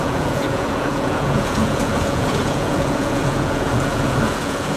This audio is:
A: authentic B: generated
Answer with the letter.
B